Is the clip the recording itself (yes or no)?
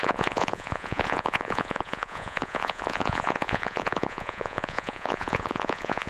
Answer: no